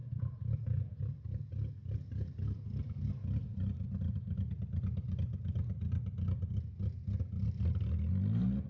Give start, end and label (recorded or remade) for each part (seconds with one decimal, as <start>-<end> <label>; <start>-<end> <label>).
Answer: 0.0-1.0 remade; 1.0-8.7 recorded